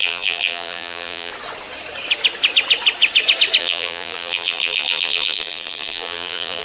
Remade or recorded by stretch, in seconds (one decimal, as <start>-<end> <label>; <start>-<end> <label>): 0.0-1.3 remade; 1.3-3.6 recorded; 3.6-6.6 remade